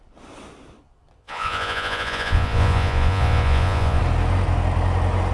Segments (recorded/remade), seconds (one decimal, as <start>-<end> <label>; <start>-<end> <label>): 0.0-1.2 recorded; 1.2-4.0 remade; 4.0-5.3 recorded